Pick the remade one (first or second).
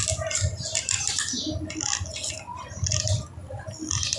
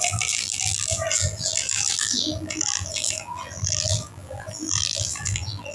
second